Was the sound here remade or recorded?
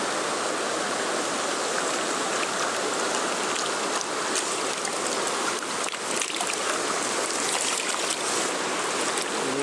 recorded